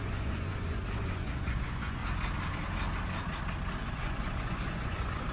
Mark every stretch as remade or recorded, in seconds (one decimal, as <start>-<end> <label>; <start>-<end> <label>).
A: 0.0-2.0 remade; 2.0-3.9 recorded; 3.9-5.3 remade